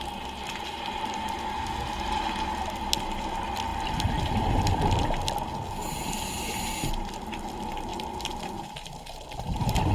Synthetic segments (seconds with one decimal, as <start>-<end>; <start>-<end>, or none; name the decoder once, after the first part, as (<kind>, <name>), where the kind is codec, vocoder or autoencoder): 3.7-5.0 (vocoder, BigVGAN v2); 7.9-8.4